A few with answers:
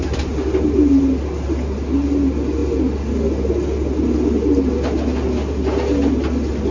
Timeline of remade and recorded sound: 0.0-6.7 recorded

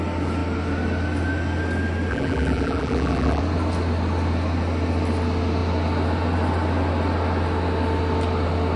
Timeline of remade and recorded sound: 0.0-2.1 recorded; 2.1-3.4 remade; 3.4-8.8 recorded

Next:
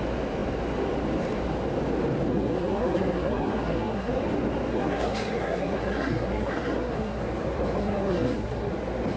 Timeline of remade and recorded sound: 0.0-2.3 recorded; 2.3-4.1 remade; 4.1-4.7 recorded; 4.7-7.2 remade; 7.2-7.8 recorded; 7.8-8.7 remade; 8.7-9.2 recorded

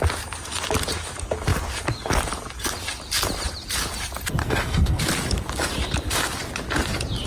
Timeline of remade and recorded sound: 0.0-4.4 recorded; 4.4-5.0 remade; 5.0-7.3 recorded

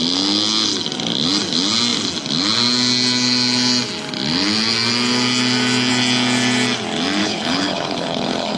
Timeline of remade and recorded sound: 0.0-7.2 recorded; 7.2-8.6 remade

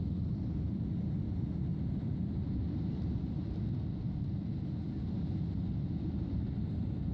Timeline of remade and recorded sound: 0.0-7.1 recorded